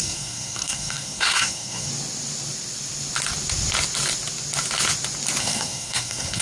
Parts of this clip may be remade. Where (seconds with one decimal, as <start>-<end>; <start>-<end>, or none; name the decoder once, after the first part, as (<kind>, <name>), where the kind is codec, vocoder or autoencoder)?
0.0-1.9 (codec, SNAC); 5.4-6.4